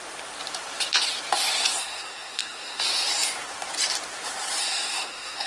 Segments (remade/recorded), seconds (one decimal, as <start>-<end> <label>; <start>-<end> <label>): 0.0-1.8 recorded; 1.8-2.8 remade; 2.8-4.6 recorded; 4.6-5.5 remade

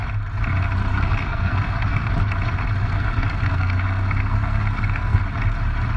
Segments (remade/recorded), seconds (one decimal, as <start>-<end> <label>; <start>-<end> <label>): 0.0-0.9 recorded; 0.9-2.1 remade; 2.1-2.8 recorded; 2.8-5.2 remade; 5.2-6.0 recorded

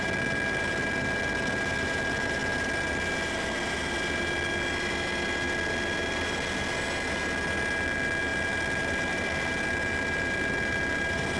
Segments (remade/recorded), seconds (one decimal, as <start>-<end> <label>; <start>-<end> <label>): 0.0-11.4 recorded

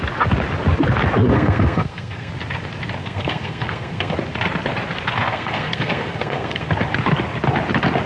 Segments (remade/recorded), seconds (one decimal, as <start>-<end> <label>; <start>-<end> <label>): 0.0-1.3 recorded; 1.3-2.3 remade; 2.3-3.0 recorded; 3.0-4.1 remade; 4.1-5.3 recorded; 5.3-6.7 remade; 6.7-8.1 recorded

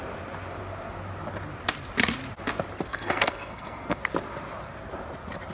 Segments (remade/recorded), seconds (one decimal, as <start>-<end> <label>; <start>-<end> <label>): 0.0-2.9 recorded; 2.9-4.0 remade; 4.0-5.5 recorded

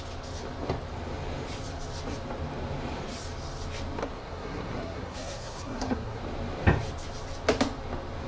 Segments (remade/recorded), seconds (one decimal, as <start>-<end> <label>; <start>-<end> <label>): 0.0-4.0 recorded; 4.0-6.2 remade; 6.2-8.3 recorded

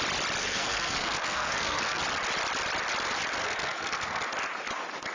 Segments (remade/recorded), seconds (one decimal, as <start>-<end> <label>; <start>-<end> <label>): 0.0-0.4 recorded; 0.4-2.0 remade; 2.0-3.4 recorded; 3.4-4.2 remade; 4.2-5.1 recorded